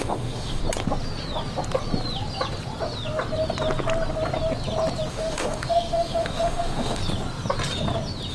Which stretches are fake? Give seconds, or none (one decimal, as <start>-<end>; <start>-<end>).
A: 0.0-0.6; 5.1-7.0